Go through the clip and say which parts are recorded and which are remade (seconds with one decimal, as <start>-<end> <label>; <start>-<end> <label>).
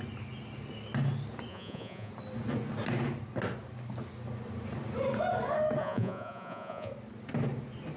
0.0-1.5 recorded; 1.5-2.1 remade; 2.1-5.8 recorded; 5.8-6.9 remade; 6.9-8.0 recorded